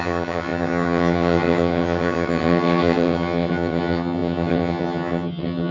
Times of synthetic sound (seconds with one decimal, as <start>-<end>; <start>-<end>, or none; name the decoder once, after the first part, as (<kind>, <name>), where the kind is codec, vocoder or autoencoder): 0.0-5.7 (vocoder, HiFi-GAN)